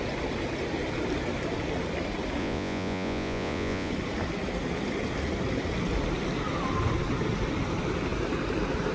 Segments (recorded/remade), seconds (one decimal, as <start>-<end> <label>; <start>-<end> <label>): 0.0-2.4 recorded; 2.4-3.9 remade; 3.9-8.9 recorded